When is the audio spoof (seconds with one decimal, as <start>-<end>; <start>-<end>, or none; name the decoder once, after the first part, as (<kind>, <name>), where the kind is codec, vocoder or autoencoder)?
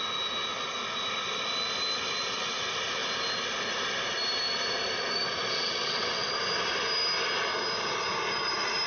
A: 5.5-6.3 (vocoder, WaveNeXt)